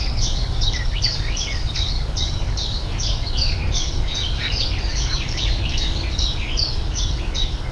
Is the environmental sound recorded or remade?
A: remade